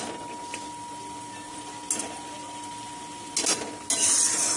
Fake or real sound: real